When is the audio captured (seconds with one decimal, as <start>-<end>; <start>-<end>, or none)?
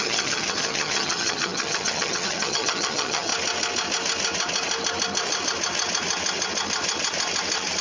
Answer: 3.3-7.8